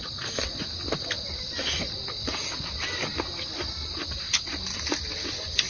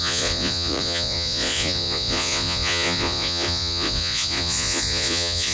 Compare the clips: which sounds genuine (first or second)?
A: first